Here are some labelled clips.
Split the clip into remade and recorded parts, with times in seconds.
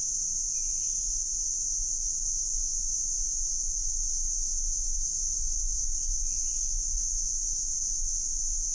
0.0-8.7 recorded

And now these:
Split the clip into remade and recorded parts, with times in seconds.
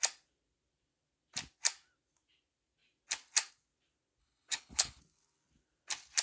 0.0-4.2 recorded; 4.2-5.0 remade; 5.0-6.2 recorded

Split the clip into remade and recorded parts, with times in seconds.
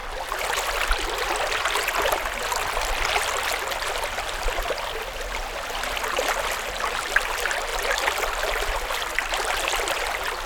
0.0-10.5 recorded